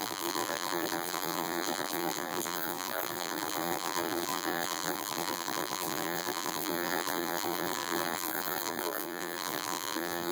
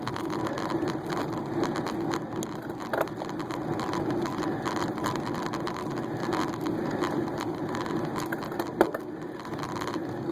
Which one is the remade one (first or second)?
first